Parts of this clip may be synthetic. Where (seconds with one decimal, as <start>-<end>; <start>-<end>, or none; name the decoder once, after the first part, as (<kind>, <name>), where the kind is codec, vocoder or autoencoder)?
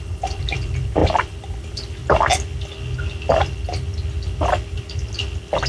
0.0-2.0 (vocoder, BigVGAN v2)